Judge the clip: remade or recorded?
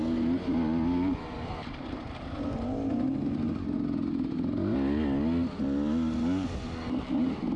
recorded